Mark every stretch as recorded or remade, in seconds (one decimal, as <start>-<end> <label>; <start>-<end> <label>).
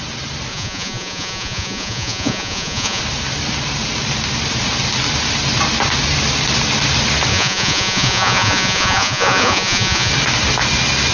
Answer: 0.0-0.5 recorded; 0.5-3.0 remade; 3.0-7.3 recorded; 7.3-10.1 remade; 10.1-11.1 recorded